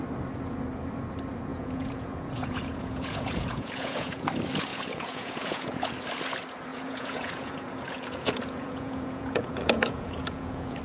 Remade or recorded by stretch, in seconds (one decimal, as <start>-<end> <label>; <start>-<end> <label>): 0.0-1.5 recorded; 1.5-4.2 remade; 4.2-4.7 recorded; 4.7-5.9 remade; 5.9-6.7 recorded; 6.7-10.8 remade